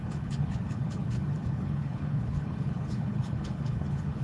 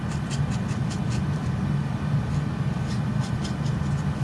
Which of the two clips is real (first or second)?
second